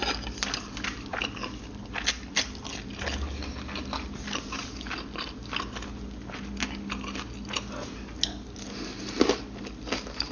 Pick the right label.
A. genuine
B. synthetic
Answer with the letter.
A